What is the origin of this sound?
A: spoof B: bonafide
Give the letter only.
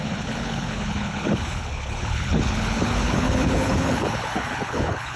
A